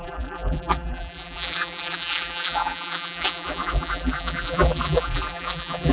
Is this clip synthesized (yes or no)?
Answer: yes